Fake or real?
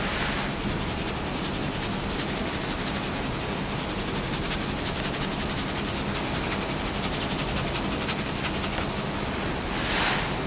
real